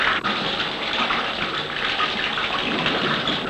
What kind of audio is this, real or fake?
real